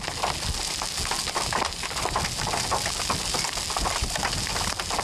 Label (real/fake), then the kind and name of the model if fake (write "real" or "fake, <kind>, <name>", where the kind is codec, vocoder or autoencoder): real